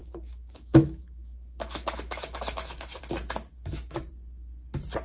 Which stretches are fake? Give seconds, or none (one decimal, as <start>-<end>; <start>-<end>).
0.0-3.0; 3.5-4.1